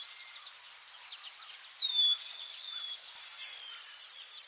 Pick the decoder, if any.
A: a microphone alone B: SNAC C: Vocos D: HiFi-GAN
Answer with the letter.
A